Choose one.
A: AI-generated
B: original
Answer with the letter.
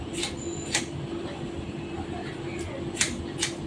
B